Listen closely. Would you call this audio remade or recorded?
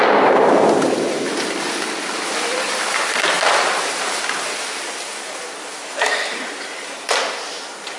remade